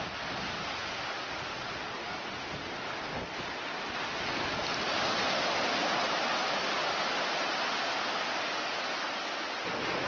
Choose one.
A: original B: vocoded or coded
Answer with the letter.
A